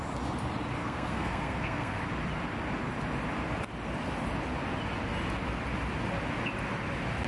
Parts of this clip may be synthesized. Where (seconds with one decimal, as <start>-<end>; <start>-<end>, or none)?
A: 0.8-2.0